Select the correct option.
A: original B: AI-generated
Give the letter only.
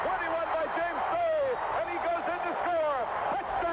A